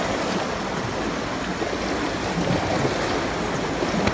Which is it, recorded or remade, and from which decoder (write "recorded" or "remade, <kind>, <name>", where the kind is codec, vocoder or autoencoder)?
recorded